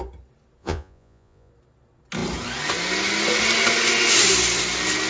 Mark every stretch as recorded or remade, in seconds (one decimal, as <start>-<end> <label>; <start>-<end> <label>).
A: 0.0-0.6 recorded; 0.6-1.5 remade; 1.5-5.1 recorded